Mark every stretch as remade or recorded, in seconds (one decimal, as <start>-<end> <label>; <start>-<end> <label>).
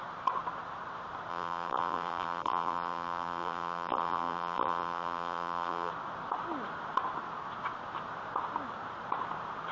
0.0-1.3 recorded; 1.3-5.9 remade; 5.9-9.7 recorded